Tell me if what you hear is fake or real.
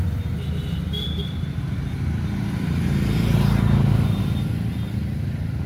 real